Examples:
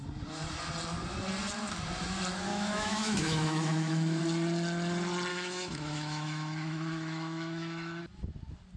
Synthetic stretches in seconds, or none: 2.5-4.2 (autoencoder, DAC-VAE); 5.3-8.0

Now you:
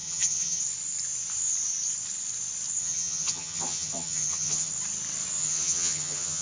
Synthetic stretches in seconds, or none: 0.0-0.6 (vocoder, HiFi-GAN); 2.8-4.7; 5.4-6.4

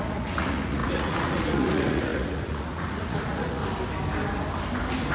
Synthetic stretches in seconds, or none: 0.0-3.6 (vocoder, Vocos)